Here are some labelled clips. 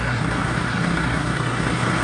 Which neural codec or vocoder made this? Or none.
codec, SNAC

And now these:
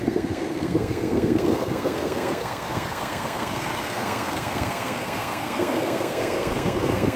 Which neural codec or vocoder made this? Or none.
codec, SNAC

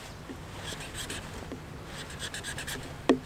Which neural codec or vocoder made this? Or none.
none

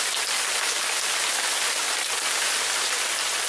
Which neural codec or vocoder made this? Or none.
none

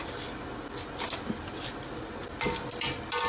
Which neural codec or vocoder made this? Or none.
none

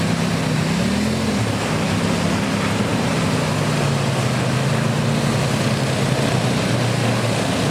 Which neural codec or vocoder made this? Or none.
none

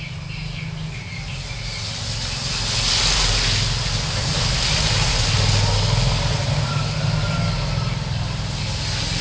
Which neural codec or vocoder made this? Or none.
none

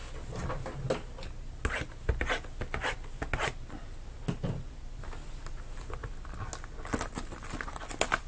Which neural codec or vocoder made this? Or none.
none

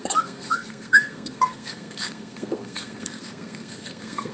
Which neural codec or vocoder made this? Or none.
codec, SNAC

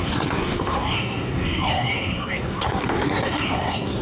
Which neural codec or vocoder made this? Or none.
codec, SNAC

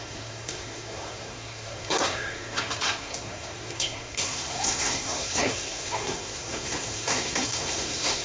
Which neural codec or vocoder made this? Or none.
codec, SNAC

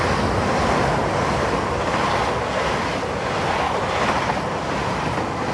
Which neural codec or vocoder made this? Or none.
none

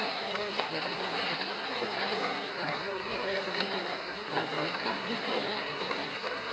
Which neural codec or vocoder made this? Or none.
codec, SNAC